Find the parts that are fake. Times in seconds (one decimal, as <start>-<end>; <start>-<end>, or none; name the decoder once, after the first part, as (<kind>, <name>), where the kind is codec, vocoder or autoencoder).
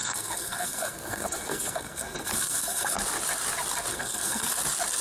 0.0-3.0 (codec, SNAC); 3.9-4.5